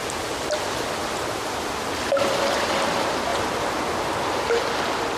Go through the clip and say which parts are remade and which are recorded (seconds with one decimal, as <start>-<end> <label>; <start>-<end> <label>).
0.0-5.2 recorded